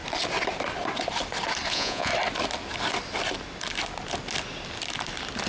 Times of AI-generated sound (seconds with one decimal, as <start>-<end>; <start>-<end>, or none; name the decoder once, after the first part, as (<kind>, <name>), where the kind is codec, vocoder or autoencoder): 1.7-2.1 (vocoder, Vocos)